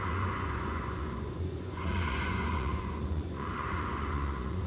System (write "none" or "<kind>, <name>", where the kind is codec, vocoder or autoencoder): vocoder, Vocos